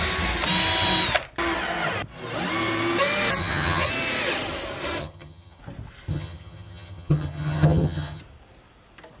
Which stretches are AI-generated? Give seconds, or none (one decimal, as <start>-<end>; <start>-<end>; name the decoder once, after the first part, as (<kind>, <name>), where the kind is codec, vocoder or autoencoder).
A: 3.4-3.9 (vocoder, HiFi-GAN); 5.0-5.6; 6.1-8.2